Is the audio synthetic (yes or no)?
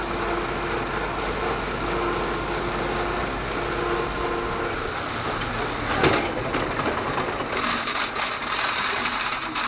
no